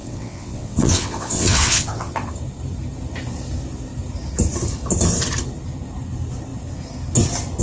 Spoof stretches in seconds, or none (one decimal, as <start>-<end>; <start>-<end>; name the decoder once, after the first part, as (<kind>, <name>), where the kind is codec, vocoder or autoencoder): 0.0-2.3 (vocoder, WaveNeXt)